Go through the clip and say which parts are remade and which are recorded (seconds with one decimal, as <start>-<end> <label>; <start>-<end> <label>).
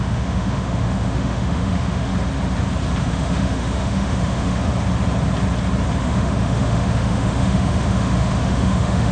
0.0-2.1 remade; 2.1-3.0 recorded; 3.0-4.7 remade; 4.7-6.0 recorded; 6.0-9.1 remade